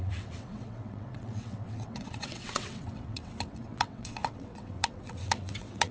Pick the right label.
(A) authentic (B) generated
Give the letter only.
B